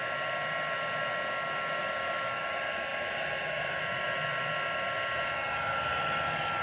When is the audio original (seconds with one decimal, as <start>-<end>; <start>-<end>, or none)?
0.0-6.6